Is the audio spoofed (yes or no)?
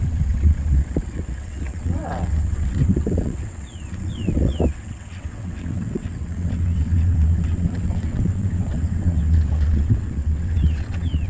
yes